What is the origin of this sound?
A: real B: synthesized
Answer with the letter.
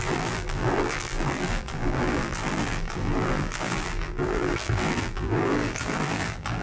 B